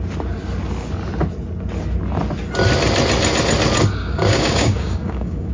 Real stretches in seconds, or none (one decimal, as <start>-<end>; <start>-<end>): 0.0-4.0